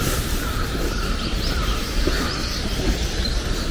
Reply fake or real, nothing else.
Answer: real